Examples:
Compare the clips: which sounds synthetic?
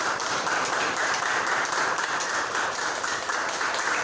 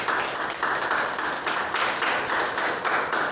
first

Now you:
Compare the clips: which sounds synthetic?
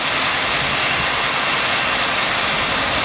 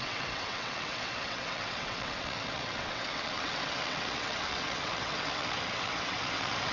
second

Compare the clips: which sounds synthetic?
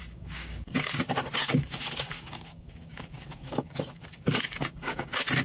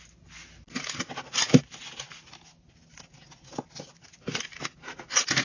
first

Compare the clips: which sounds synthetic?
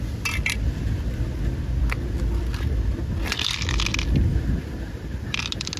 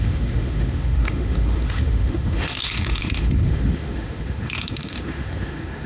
second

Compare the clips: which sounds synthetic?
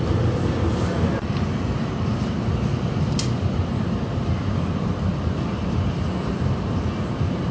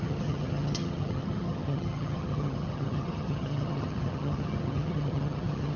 second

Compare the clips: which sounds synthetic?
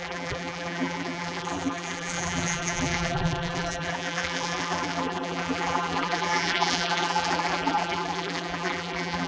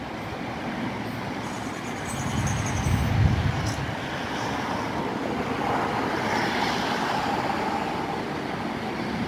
first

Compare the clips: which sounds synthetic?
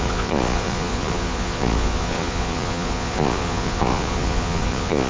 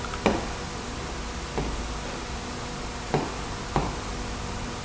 first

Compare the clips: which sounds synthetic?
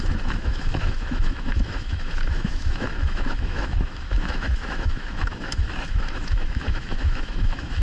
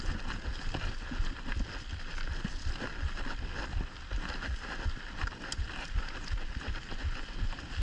first